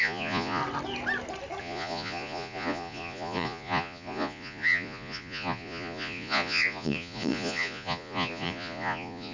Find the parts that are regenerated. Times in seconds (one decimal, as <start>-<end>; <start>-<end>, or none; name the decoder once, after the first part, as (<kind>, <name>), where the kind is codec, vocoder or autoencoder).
0.0-0.6 (vocoder, Vocos); 1.6-9.3